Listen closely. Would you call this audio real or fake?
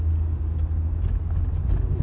real